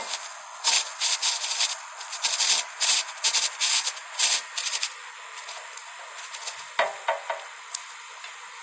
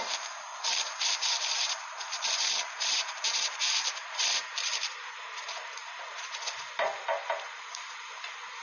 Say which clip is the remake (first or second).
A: second